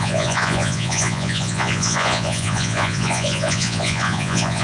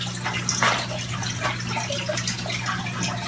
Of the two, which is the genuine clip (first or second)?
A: second